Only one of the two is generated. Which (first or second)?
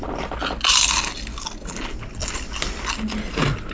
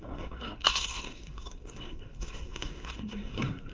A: second